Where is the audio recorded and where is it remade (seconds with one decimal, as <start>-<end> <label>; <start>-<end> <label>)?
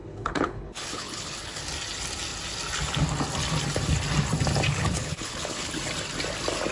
0.0-1.6 remade; 1.6-4.7 recorded; 4.7-5.7 remade; 5.7-6.7 recorded